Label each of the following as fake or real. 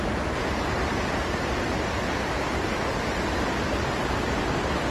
real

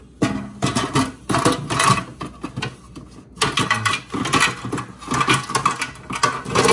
real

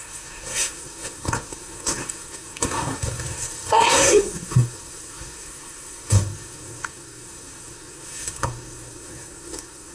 fake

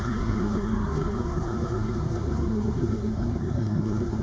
fake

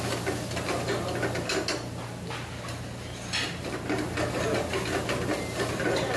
real